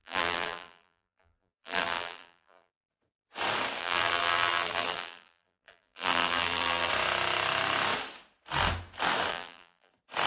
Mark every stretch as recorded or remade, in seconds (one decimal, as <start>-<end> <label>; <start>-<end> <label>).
0.0-2.7 remade; 2.7-3.8 recorded; 3.8-6.9 remade; 6.9-9.3 recorded; 9.3-9.9 remade; 9.9-10.3 recorded